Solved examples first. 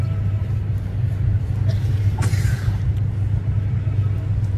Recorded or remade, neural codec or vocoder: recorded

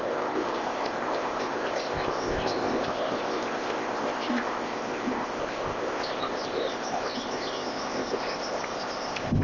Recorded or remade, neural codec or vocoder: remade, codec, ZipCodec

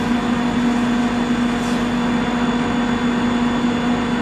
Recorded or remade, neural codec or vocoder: recorded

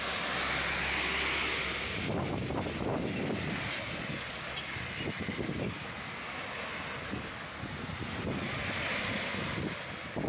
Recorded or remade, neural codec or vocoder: recorded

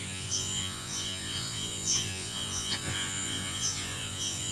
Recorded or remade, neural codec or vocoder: remade, vocoder, Vocos